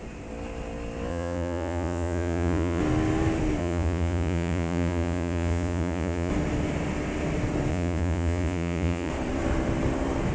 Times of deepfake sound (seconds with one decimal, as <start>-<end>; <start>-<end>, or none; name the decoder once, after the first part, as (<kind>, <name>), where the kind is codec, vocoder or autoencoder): 1.1-2.8 (vocoder, Vocos); 3.6-6.3; 7.7-9.1

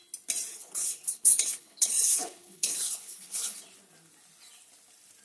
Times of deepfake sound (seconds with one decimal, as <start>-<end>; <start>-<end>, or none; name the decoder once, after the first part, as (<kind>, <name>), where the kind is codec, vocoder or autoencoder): 0.5-3.6 (codec, HILCodec)